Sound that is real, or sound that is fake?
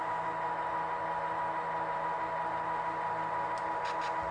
real